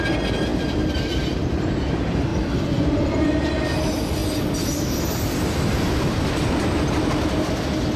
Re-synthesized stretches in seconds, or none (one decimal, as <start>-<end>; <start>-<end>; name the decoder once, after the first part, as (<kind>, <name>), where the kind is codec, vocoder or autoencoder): 0.5-1.2 (vocoder, BigVGAN v2)